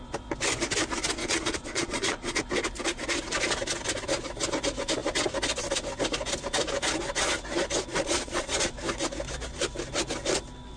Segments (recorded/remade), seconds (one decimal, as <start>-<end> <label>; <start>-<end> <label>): 0.0-1.2 recorded; 1.2-2.4 remade; 2.4-7.9 recorded; 7.9-8.8 remade; 8.8-10.8 recorded